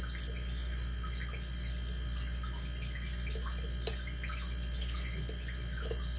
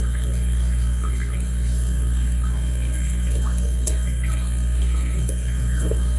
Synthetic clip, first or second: second